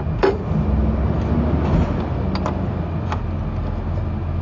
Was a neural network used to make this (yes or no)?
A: no